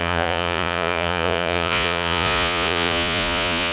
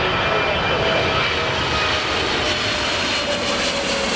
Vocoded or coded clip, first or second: first